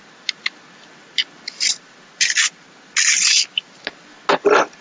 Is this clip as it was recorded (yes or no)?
yes